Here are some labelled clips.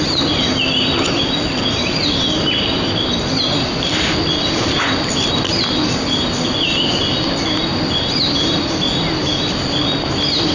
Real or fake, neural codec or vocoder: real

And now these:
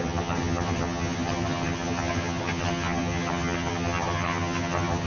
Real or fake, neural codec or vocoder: fake, vocoder, HiFi-GAN